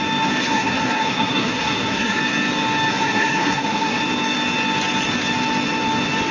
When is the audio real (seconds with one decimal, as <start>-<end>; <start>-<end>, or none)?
0.0-0.4; 2.2-2.9; 4.0-6.3